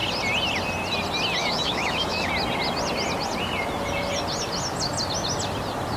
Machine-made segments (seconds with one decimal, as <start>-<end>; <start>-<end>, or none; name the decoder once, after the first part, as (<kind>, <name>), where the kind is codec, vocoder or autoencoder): 1.4-2.3 (autoencoder, DAC-VAE)